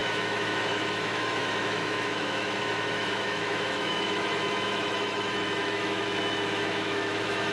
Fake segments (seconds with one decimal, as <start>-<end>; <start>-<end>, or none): 0.0-7.5